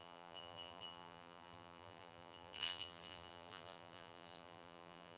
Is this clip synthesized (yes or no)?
yes